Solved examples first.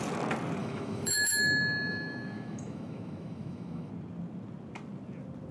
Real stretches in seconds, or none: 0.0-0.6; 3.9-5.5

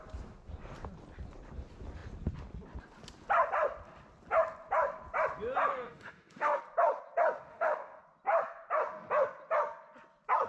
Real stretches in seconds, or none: 0.0-5.7; 6.6-7.5; 8.0-10.5

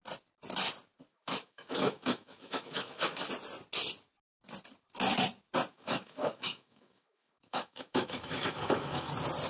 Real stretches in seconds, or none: 0.0-1.1; 3.3-5.7; 9.1-9.5

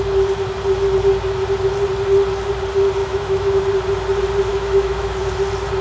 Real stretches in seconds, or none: 0.0-3.0; 3.6-4.5; 5.2-5.8

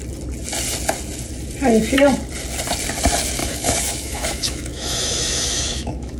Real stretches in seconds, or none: 0.0-3.4